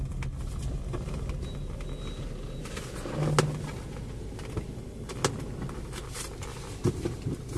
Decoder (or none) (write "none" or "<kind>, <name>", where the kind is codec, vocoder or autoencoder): none